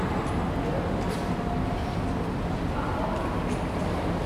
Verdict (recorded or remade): recorded